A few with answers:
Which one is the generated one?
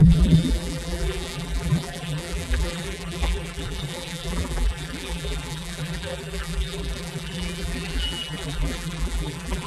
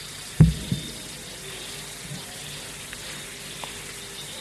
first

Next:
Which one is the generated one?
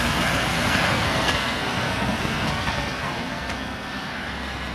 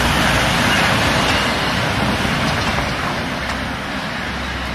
first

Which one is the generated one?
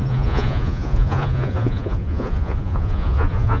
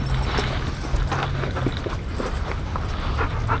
first